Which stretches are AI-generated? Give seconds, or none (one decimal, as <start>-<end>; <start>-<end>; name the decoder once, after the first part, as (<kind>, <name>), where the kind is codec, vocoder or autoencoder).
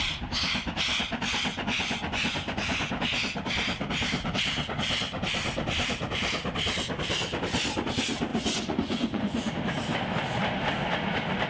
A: 1.5-2.9 (vocoder, Vocos); 8.3-9.5